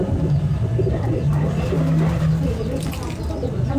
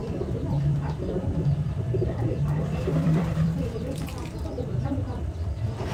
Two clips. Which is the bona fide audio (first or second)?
first